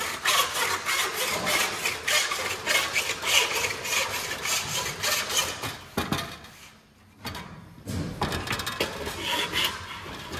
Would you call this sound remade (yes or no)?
no